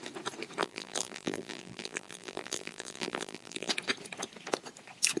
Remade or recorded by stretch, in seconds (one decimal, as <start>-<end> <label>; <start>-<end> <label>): 0.0-0.6 recorded; 0.6-3.7 remade; 3.7-5.2 recorded